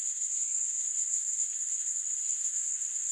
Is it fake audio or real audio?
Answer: fake